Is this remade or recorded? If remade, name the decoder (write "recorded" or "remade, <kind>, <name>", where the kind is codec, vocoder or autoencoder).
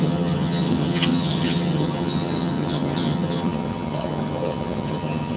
remade, vocoder, HiFi-GAN